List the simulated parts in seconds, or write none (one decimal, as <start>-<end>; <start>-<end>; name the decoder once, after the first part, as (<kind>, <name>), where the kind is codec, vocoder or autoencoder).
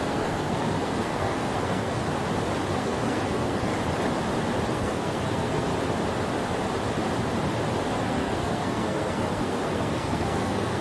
0.0-2.0 (codec, SNAC); 2.7-3.7; 4.7-5.7; 7.9-10.8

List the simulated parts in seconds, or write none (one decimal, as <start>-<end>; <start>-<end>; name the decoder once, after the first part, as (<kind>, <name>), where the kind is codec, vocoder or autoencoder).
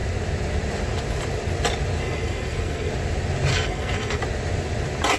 2.0-2.9 (codec, SNAC); 3.5-4.2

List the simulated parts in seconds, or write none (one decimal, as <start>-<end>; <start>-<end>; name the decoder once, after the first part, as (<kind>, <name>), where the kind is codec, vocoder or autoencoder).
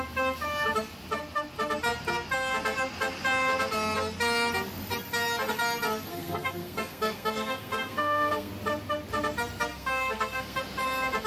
6.1-8.5 (codec, SNAC); 9.7-10.6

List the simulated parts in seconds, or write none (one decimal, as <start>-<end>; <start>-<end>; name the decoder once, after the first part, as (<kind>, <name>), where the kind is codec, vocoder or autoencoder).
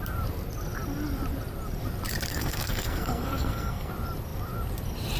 2.3-3.9 (codec, SNAC)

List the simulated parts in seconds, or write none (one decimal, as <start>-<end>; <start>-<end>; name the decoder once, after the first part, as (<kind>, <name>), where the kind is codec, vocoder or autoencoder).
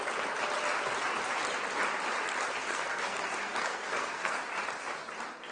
2.6-4.4 (codec, SNAC)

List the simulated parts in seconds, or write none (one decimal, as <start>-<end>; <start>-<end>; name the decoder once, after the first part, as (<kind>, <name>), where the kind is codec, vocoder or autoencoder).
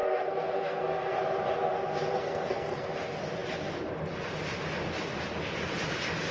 0.0-1.2 (codec, SNAC); 2.1-2.9